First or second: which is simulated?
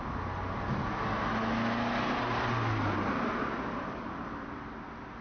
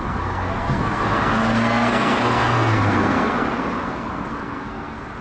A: second